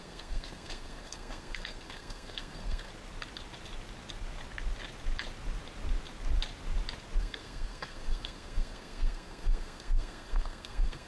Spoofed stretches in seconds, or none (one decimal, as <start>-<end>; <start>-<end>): 0.0-2.9; 7.2-11.1